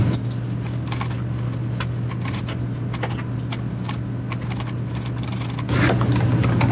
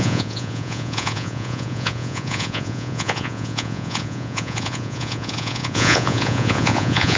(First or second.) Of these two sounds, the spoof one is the second